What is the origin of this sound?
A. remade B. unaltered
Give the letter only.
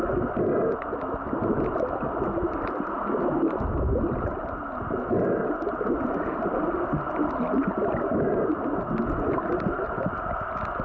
B